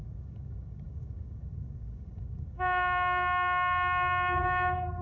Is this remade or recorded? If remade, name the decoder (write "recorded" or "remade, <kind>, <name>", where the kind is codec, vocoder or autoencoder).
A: remade, codec, DAC